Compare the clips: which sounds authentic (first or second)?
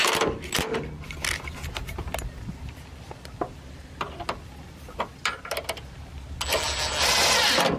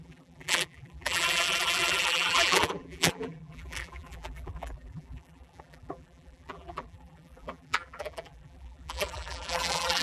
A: first